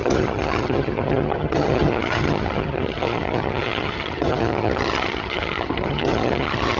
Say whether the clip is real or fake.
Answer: fake